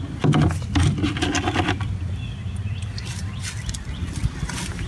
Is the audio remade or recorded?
recorded